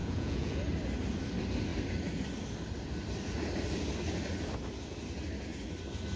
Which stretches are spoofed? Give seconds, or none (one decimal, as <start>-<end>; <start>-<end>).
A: 0.0-0.6